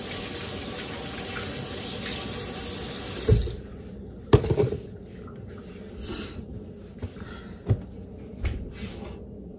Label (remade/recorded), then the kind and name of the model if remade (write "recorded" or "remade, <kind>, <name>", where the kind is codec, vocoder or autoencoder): recorded